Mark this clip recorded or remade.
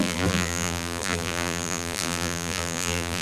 remade